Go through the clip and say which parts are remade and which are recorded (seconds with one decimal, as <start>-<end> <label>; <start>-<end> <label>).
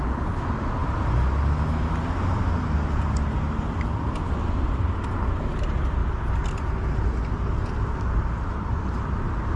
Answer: 0.0-9.6 recorded